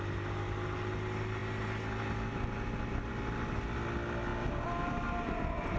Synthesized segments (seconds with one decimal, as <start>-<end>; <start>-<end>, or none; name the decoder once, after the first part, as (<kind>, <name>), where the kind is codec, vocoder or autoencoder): none